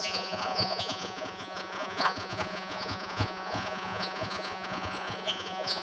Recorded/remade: remade